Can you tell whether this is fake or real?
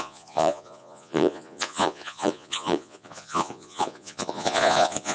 fake